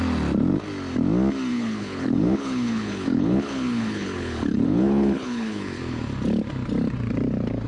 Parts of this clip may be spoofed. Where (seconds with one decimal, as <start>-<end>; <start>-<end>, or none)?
1.5-6.0